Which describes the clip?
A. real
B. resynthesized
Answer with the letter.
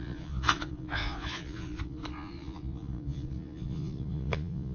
B